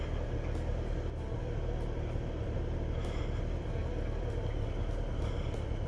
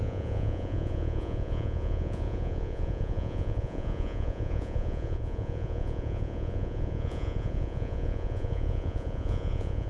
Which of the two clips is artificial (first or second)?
second